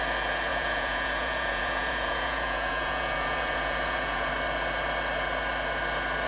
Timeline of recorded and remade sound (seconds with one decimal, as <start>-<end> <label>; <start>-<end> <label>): 0.0-0.5 recorded; 0.5-4.3 remade; 4.3-6.3 recorded